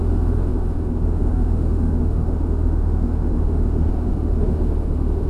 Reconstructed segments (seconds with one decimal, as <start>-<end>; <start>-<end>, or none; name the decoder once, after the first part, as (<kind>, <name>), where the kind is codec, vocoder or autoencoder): 0.0-5.3 (autoencoder, DAC-VAE)